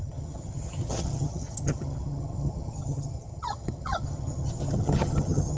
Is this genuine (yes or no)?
no